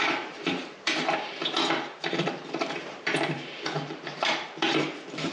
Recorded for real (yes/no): no